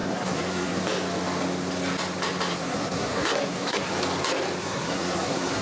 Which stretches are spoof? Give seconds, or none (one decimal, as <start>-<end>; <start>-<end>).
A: 0.0-0.8; 2.5-3.9; 4.6-5.6